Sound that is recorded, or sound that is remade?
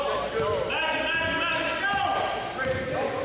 recorded